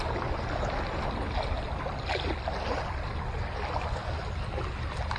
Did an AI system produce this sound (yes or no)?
no